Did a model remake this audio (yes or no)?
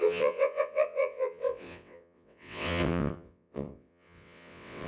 yes